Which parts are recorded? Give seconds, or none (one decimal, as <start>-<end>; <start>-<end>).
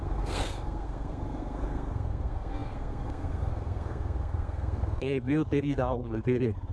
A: none